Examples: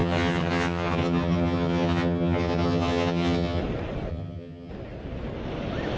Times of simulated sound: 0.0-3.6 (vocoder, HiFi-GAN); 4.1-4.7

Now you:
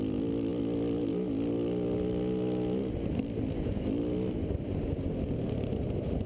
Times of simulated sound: none

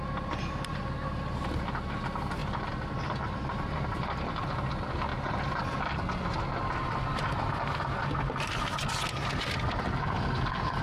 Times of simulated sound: 2.4-4.5 (vocoder, BigVGAN v2)

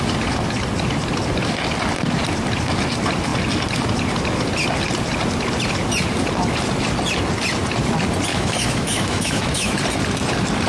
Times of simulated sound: 8.3-9.8 (autoencoder, DAC-VAE)

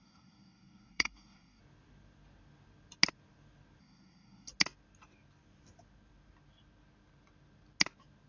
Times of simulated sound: 0.0-1.6 (codec, SNAC); 3.8-4.5